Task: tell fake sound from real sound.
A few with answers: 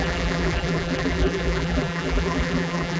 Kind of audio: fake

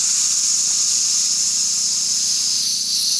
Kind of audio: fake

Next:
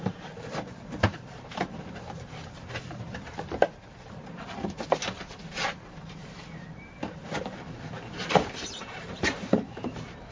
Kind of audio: fake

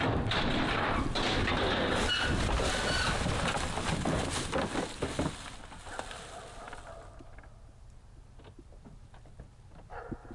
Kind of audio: real